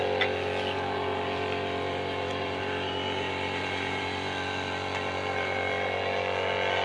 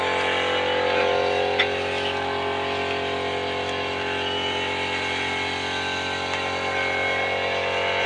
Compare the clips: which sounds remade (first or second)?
first